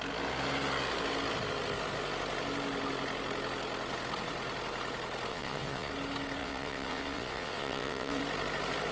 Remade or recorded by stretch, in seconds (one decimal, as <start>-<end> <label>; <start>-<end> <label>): 0.0-5.3 recorded; 5.3-5.9 remade; 5.9-6.4 recorded; 6.4-8.2 remade; 8.2-8.9 recorded